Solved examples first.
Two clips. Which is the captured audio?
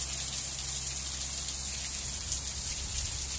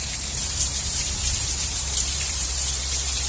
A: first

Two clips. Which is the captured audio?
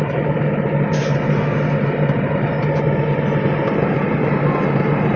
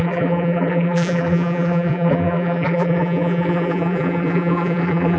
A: first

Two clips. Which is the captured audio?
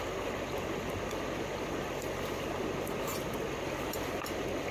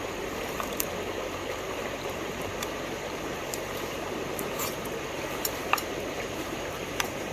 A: first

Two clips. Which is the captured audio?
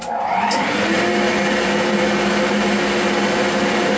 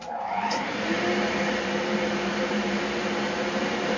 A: first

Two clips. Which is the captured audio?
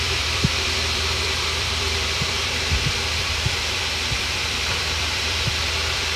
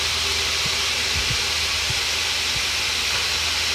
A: second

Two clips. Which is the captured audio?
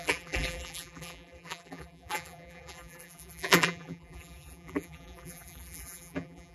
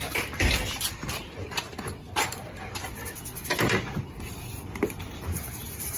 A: second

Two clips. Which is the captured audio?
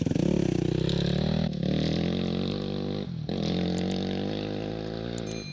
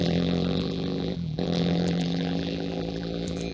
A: first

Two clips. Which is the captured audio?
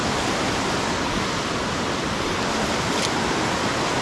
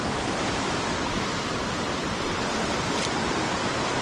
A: first